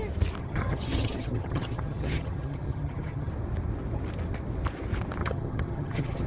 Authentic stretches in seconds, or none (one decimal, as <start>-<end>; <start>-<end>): 0.0-0.4; 3.3-5.2